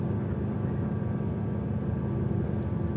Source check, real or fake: real